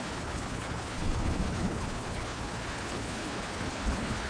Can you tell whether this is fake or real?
fake